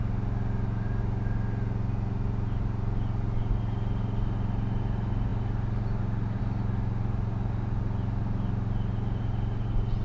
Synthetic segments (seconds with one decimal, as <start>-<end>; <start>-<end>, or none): none